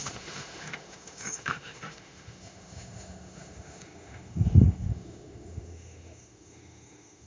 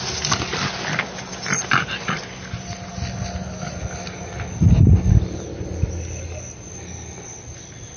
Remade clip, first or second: first